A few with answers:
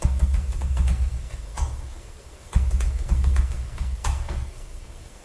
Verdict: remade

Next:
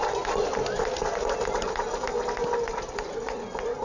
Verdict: recorded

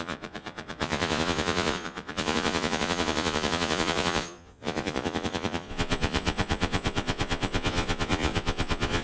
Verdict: remade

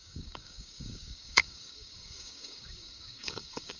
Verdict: remade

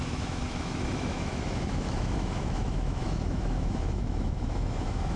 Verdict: remade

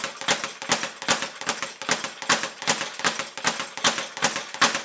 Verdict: recorded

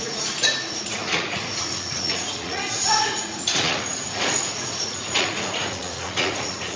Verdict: remade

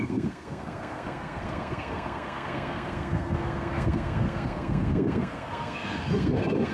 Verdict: remade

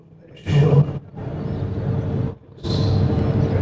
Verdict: recorded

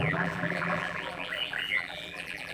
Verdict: remade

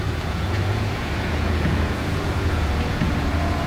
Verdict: remade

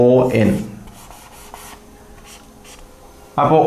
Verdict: recorded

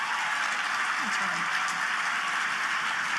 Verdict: recorded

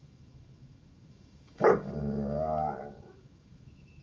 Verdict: remade